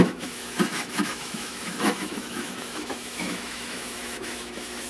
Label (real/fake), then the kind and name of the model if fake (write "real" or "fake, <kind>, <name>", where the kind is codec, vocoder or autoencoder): fake, autoencoder, DAC-VAE